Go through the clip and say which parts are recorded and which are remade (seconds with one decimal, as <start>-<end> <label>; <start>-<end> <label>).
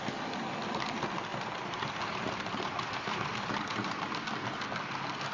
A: 0.0-1.3 recorded; 1.3-4.2 remade; 4.2-5.3 recorded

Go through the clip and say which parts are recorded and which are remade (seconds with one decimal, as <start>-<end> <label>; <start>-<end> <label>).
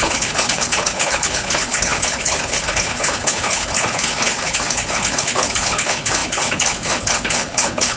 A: 0.0-8.0 remade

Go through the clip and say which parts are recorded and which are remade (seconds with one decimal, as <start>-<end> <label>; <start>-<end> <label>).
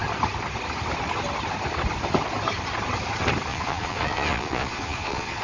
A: 0.0-3.5 recorded; 3.5-5.4 remade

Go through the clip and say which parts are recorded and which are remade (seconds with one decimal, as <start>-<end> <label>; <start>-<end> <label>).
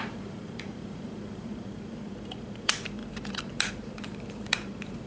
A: 0.0-5.1 remade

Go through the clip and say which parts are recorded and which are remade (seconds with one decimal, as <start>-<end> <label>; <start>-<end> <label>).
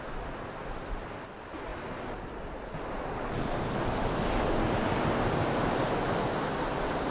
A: 0.0-7.1 recorded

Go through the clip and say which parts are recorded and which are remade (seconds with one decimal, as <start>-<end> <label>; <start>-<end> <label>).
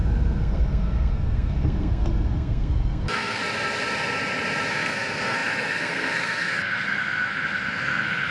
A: 0.0-3.4 remade; 3.4-4.7 recorded; 4.7-8.3 remade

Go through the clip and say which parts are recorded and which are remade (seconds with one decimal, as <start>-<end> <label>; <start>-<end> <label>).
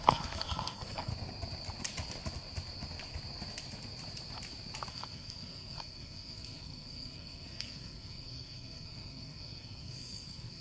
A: 0.0-1.1 remade; 1.1-4.9 recorded; 4.9-10.6 remade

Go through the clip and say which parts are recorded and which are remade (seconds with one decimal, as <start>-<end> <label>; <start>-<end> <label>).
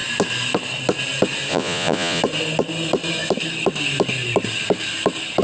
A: 0.0-1.5 recorded; 1.5-2.2 remade; 2.2-5.4 recorded